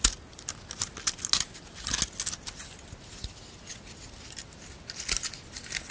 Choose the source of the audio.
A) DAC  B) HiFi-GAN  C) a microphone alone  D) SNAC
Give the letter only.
C